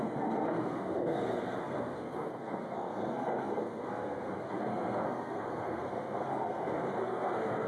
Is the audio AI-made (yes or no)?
yes